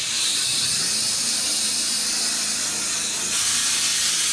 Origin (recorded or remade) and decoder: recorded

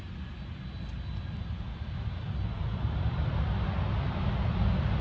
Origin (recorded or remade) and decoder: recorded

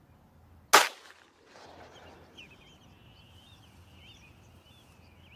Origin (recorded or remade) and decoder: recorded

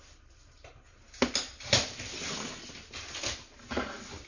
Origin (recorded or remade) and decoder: recorded